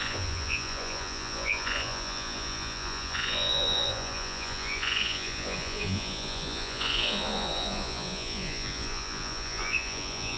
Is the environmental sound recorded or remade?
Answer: remade